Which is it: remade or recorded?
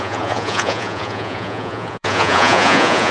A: remade